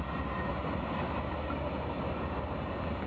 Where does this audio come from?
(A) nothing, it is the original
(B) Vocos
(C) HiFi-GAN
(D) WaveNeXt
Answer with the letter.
A